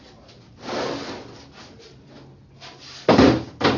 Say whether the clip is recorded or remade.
recorded